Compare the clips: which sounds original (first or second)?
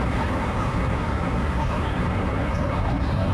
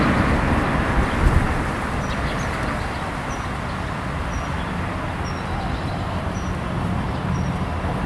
second